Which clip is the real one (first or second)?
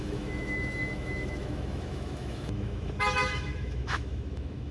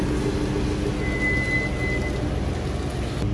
second